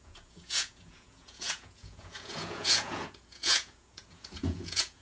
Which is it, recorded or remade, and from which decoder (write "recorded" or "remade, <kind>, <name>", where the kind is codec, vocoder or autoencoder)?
remade, vocoder, Vocos